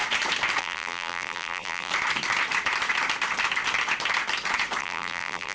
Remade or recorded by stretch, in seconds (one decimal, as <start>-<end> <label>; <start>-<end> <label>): 0.0-0.6 recorded; 0.6-1.9 remade; 1.9-4.8 recorded; 4.8-5.5 remade